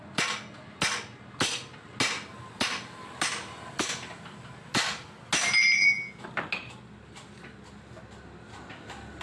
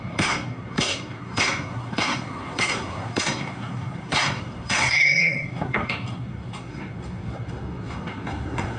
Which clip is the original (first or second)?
first